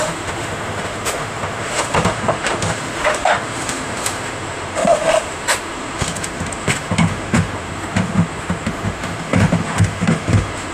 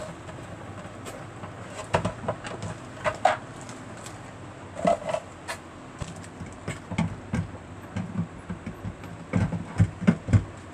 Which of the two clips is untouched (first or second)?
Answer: second